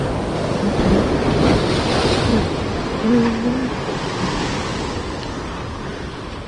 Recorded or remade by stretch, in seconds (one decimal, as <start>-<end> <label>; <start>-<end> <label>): 0.0-6.5 recorded